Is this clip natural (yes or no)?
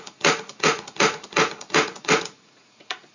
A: no